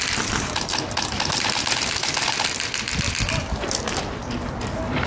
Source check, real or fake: fake